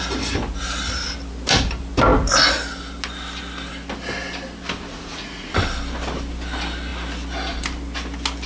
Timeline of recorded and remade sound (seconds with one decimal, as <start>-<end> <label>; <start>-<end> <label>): 0.0-4.9 recorded; 4.9-5.5 remade; 5.5-8.5 recorded